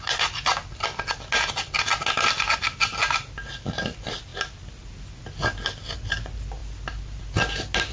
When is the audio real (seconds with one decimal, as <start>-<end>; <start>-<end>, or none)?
0.0-7.9